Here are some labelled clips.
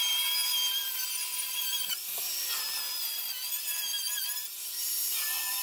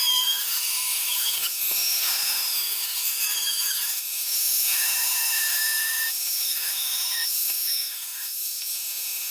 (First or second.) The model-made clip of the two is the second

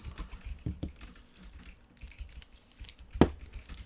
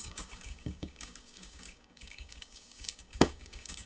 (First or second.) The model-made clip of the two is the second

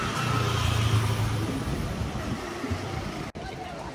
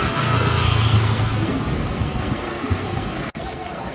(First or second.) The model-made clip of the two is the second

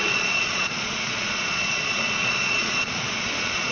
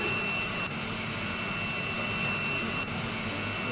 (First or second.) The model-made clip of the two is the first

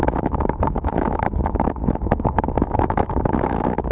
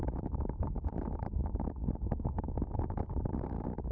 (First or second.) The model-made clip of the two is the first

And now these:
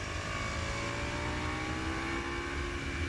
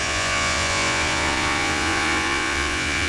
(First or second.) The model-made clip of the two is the second